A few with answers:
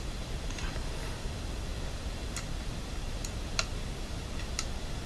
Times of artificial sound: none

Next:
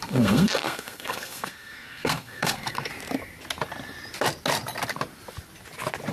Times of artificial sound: 0.0-2.9 (codec, SNAC)

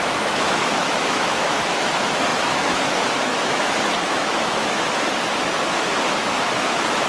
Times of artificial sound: 0.0-7.1 (autoencoder, DAC-VAE)